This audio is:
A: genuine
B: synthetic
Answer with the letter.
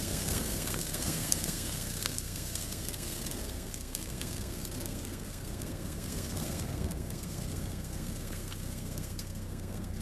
B